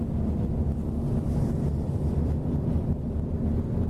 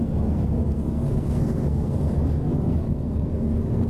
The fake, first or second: second